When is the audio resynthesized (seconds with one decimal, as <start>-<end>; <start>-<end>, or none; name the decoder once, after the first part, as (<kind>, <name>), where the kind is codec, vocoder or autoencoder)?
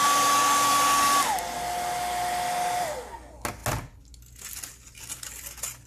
none